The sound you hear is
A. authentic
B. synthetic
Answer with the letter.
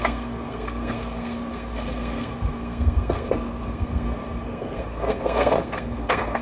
B